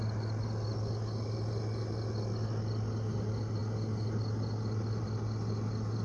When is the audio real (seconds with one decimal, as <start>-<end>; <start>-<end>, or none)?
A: 0.0-6.0